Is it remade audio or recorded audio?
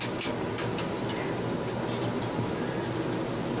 recorded